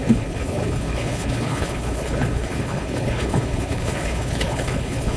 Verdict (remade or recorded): remade